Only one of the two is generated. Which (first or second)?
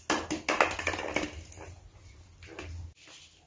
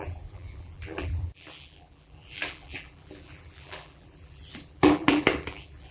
second